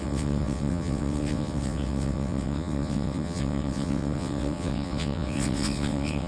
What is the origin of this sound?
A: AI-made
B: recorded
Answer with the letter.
A